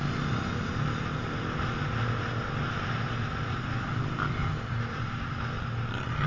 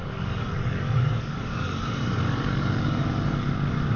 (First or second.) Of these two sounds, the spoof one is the second